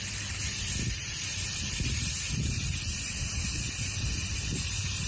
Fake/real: real